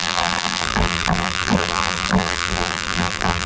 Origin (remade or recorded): remade